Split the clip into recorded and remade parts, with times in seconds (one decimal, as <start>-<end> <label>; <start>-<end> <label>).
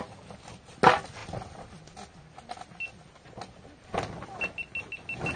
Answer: 0.0-5.4 recorded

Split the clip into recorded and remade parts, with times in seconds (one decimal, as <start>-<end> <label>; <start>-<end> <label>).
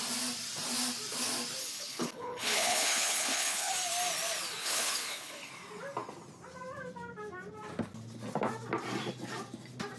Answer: 0.0-1.6 recorded; 1.6-3.7 remade; 3.7-4.6 recorded; 4.6-5.5 remade; 5.5-10.0 recorded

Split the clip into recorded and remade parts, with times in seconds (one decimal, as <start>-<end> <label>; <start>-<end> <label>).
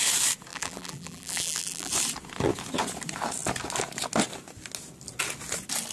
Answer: 0.0-0.5 recorded; 0.5-1.9 remade; 1.9-5.9 recorded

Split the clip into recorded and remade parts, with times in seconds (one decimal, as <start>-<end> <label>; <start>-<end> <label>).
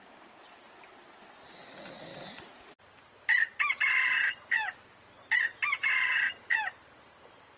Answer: 0.0-7.6 recorded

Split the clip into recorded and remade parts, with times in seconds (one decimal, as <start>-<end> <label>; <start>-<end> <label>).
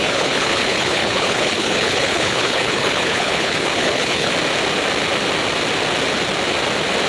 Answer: 0.0-4.3 remade; 4.3-7.1 recorded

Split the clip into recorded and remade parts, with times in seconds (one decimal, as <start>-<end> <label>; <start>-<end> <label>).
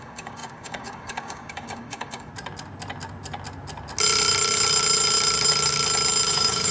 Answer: 0.0-2.3 remade; 2.3-6.3 recorded; 6.3-6.7 remade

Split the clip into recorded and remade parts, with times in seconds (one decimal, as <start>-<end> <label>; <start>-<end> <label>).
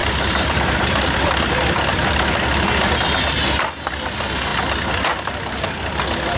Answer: 0.0-6.4 recorded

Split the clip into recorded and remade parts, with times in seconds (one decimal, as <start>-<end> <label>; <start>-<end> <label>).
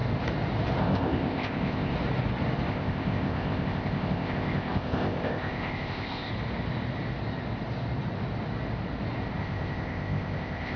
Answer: 0.0-0.8 recorded; 0.8-1.9 remade; 1.9-2.7 recorded; 2.7-6.3 remade; 6.3-9.4 recorded; 9.4-10.8 remade